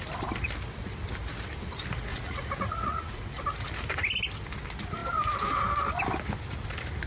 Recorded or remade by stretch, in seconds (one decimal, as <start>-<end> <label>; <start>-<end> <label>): 0.0-2.1 recorded; 2.1-3.4 remade; 3.4-7.1 recorded